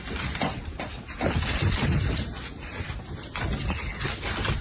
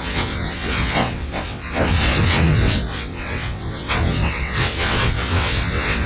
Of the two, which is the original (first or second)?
first